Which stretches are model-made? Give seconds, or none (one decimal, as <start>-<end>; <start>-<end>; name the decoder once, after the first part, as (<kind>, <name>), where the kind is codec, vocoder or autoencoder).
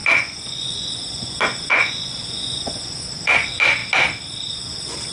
0.0-3.8 (vocoder, Vocos); 4.5-5.1